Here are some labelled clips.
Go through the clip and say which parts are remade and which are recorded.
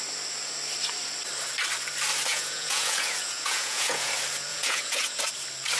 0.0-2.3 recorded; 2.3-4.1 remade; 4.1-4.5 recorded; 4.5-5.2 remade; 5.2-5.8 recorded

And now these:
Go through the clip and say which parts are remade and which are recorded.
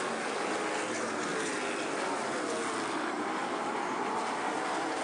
0.0-5.0 recorded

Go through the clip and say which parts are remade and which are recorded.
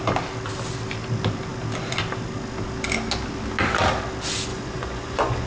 0.0-4.5 recorded; 4.5-5.5 remade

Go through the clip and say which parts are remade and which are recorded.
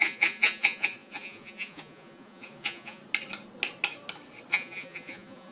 0.0-3.0 remade; 3.0-4.5 recorded; 4.5-5.5 remade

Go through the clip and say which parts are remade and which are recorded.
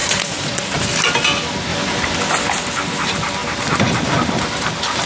0.0-0.7 remade; 0.7-5.1 recorded